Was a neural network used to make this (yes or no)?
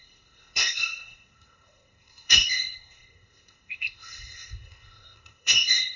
yes